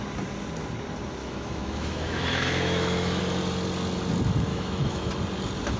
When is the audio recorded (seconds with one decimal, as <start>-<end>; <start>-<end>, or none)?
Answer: 0.0-1.2; 3.2-4.5; 5.1-5.8